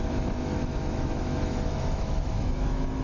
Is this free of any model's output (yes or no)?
no